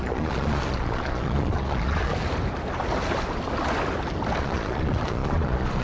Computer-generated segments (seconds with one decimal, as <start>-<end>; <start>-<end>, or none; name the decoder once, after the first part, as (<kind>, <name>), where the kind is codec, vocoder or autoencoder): 0.0-2.1 (vocoder, Vocos); 4.4-5.8